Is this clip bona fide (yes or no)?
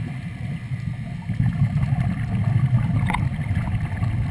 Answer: no